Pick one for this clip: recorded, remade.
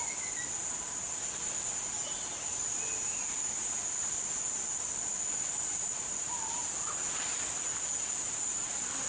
recorded